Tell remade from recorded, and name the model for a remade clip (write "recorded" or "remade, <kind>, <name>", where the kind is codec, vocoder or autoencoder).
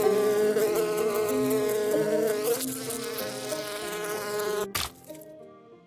recorded